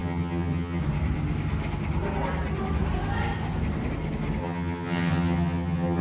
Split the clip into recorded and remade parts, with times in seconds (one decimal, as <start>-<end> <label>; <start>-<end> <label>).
0.0-0.8 remade; 0.8-4.4 recorded; 4.4-6.0 remade